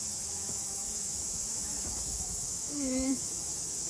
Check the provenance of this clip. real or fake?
fake